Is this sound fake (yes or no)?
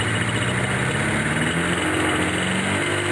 no